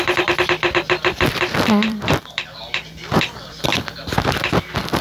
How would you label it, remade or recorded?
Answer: remade